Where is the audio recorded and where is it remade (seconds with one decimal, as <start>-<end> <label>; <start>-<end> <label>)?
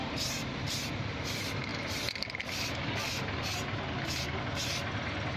0.0-5.4 recorded